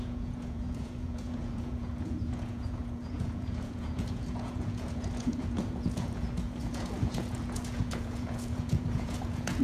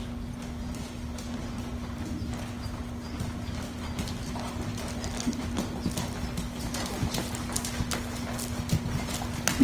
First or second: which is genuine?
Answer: second